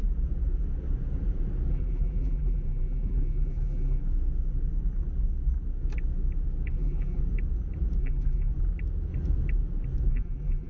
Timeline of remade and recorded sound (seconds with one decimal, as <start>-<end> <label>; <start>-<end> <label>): 0.0-1.7 recorded; 1.7-4.0 remade; 4.0-6.7 recorded; 6.7-7.2 remade; 7.2-8.0 recorded; 8.0-8.5 remade; 8.5-10.1 recorded; 10.1-10.7 remade